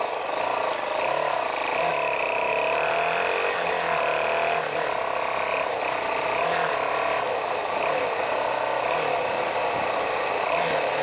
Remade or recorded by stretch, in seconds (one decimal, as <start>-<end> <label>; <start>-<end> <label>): 0.0-1.9 recorded; 1.9-2.5 remade; 2.5-11.0 recorded